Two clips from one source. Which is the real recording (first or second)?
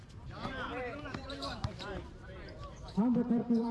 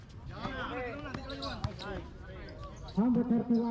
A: second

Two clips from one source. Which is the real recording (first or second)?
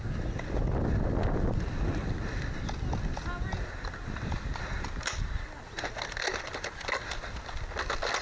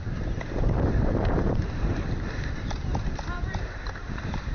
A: first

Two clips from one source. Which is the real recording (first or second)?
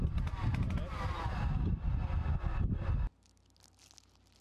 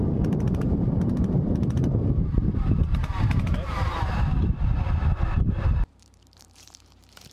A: first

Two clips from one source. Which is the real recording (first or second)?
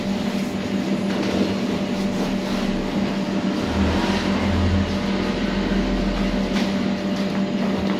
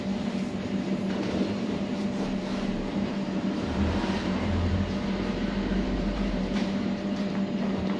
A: first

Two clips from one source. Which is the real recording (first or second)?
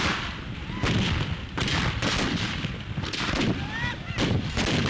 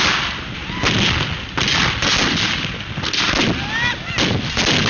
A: second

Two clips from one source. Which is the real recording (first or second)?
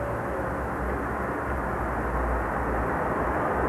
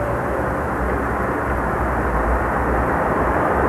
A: first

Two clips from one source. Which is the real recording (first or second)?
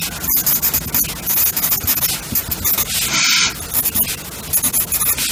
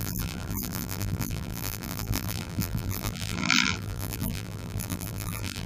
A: first